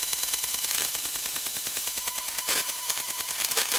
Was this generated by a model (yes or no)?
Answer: yes